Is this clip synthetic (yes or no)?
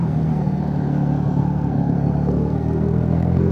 yes